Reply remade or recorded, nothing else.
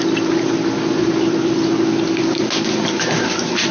recorded